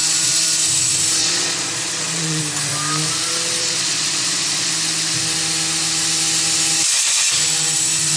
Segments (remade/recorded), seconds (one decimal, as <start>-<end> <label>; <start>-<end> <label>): 0.0-1.2 recorded; 1.2-2.4 remade; 2.4-3.6 recorded; 3.6-4.7 remade; 4.7-8.2 recorded